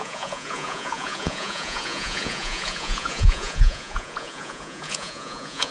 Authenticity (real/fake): fake